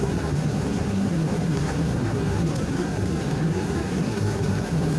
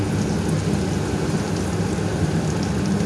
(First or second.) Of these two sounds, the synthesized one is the first